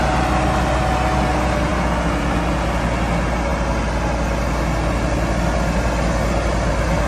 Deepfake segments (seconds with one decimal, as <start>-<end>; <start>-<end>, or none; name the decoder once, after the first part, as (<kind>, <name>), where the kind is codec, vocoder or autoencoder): none